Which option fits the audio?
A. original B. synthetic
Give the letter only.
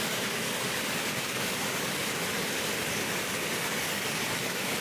B